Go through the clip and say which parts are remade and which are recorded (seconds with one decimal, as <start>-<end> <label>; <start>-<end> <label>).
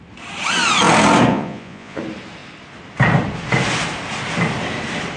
0.0-1.3 recorded; 1.3-2.0 remade; 2.0-5.2 recorded